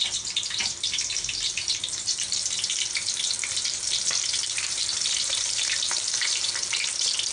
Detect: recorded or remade remade